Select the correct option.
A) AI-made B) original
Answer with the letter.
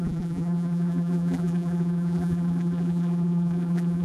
A